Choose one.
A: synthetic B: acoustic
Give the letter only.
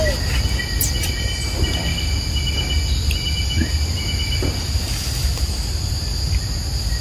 B